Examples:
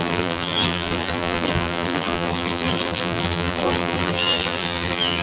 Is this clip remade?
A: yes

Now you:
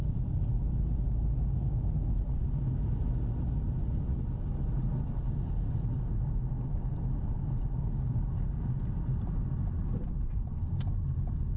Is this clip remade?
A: no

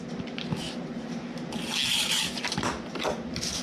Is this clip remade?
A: no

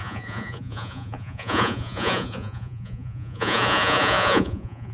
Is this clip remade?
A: yes